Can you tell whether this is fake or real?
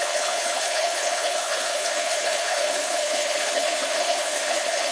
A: fake